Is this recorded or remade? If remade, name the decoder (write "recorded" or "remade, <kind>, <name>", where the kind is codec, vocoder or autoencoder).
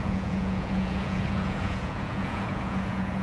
remade, vocoder, Vocos